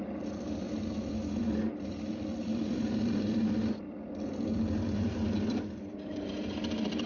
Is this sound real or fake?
fake